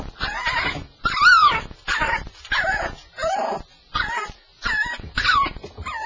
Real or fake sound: real